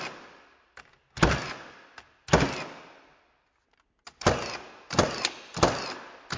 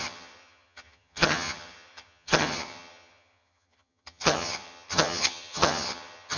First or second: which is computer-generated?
second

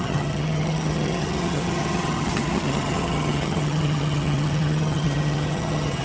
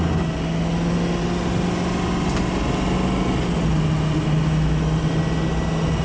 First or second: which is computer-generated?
first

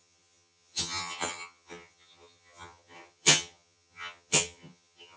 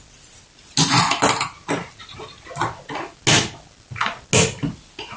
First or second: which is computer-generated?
first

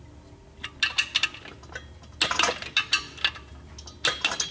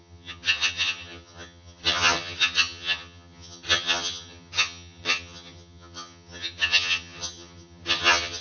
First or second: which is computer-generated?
second